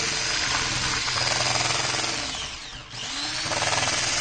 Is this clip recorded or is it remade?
recorded